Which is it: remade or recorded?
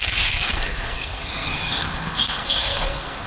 remade